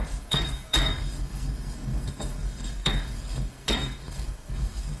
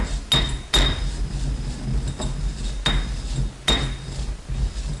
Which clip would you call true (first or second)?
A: second